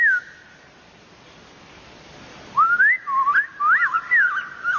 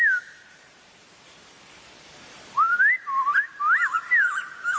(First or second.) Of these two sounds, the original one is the first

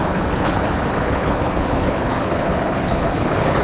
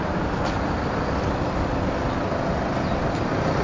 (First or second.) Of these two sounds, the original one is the second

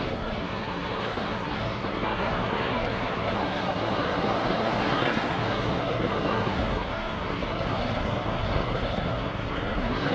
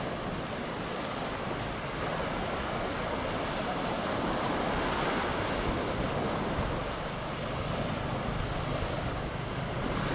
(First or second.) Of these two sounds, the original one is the second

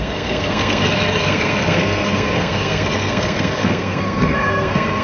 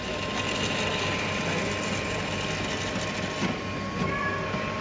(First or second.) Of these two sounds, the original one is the second